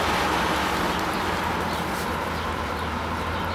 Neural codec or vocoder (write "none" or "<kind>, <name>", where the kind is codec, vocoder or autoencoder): none